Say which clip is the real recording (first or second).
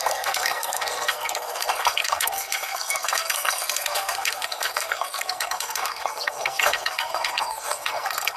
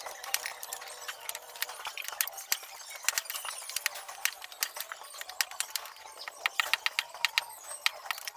second